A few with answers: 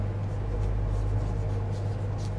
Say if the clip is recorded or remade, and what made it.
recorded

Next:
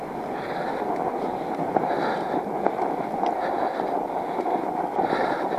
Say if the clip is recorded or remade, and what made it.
recorded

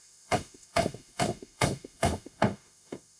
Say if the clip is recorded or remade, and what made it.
remade, autoencoder, DAC-VAE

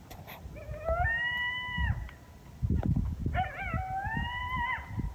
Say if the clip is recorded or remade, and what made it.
recorded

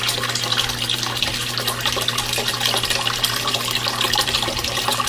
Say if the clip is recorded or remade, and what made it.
recorded